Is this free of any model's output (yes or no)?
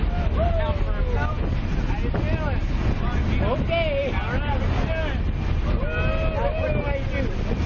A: yes